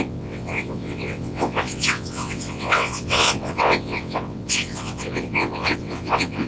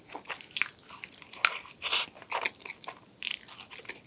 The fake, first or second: first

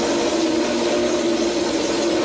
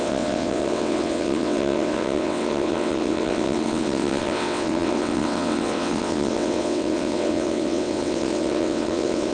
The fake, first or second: second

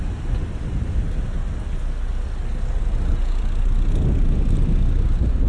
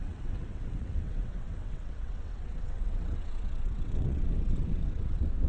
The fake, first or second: second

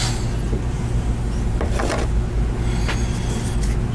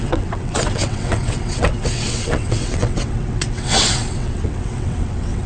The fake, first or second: second